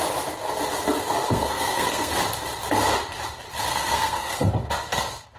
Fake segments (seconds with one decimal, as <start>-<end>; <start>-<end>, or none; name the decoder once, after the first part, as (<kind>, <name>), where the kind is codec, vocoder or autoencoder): 1.2-2.1 (codec, SNAC); 3.7-4.5